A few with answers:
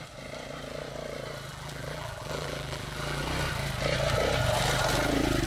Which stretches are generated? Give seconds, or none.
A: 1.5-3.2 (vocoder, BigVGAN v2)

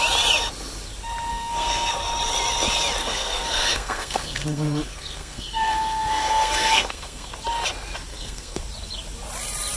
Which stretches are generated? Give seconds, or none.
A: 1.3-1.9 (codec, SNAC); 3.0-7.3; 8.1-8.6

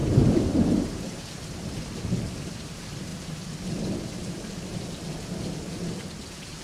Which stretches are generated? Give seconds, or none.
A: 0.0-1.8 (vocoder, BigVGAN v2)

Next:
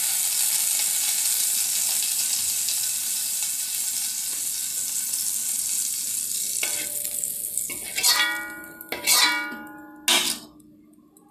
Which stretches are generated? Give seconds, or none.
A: none